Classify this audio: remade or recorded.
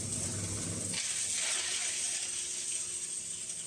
recorded